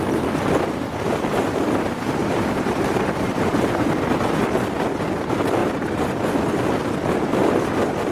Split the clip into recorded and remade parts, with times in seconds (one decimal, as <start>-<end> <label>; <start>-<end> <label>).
0.0-2.2 recorded; 2.2-3.9 remade; 3.9-5.6 recorded; 5.6-6.2 remade; 6.2-8.1 recorded